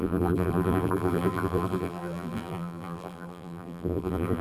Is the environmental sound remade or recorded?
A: remade